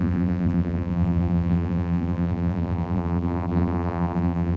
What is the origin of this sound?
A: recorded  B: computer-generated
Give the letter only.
B